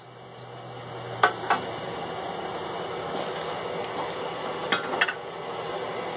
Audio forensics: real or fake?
real